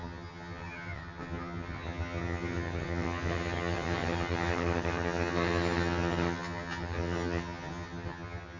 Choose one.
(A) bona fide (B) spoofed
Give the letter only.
B